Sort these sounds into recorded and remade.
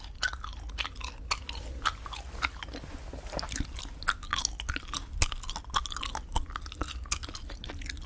recorded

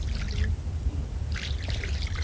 recorded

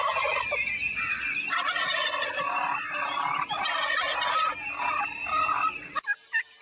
recorded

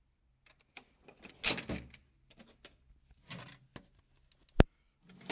recorded